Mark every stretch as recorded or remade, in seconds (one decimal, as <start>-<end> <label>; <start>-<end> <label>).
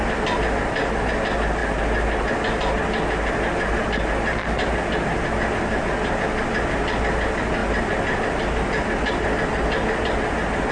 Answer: 0.0-10.7 recorded